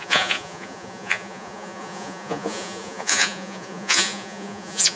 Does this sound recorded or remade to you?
remade